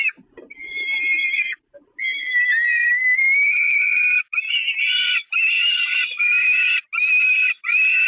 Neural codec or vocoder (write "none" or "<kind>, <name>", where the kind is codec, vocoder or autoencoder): none